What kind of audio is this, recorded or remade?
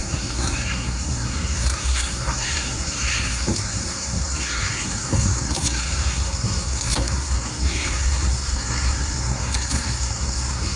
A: remade